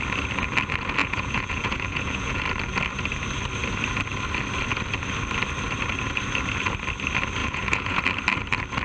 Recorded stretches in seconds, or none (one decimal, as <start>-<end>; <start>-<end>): 0.0-1.0; 2.4-7.4; 8.0-8.8